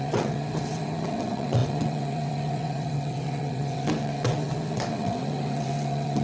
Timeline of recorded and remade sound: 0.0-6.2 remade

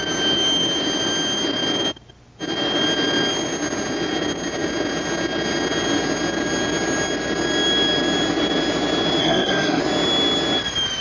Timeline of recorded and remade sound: 0.0-9.2 recorded; 9.2-9.8 remade; 9.8-11.0 recorded

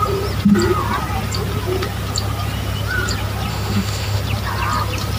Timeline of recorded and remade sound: 0.0-3.5 recorded; 3.5-4.2 remade; 4.2-5.2 recorded